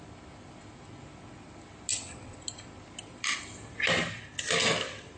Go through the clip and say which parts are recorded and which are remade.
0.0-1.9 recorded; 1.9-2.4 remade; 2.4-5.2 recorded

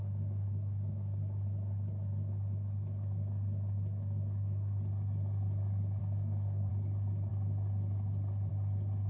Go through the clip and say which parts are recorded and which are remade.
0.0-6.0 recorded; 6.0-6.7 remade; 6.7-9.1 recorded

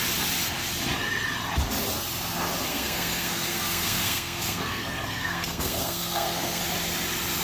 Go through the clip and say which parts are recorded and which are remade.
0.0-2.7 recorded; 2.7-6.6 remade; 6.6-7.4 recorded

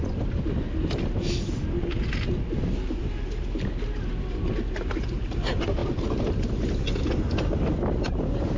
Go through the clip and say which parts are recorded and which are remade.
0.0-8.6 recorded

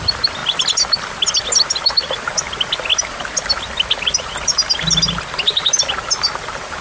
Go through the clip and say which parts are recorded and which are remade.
0.0-6.8 recorded

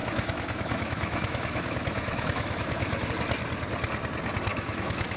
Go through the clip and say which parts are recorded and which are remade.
0.0-3.1 remade; 3.1-4.5 recorded; 4.5-5.2 remade

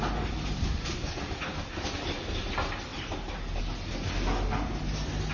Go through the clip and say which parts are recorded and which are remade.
0.0-5.3 recorded